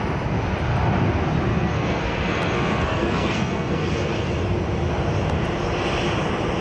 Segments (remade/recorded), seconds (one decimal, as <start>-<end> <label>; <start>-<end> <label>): 0.0-1.5 recorded; 1.5-4.3 remade; 4.3-6.6 recorded